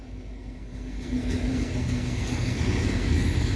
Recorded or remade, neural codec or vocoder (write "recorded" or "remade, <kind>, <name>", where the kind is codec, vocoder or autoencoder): remade, codec, SNAC